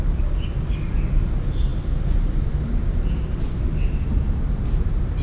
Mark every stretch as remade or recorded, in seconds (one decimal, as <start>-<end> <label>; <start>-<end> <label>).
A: 0.0-5.2 recorded